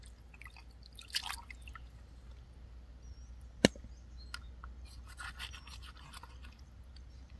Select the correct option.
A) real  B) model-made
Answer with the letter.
A